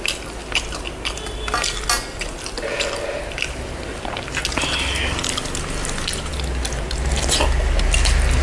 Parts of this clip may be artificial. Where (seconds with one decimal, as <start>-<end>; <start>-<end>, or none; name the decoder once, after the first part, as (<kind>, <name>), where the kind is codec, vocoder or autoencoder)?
none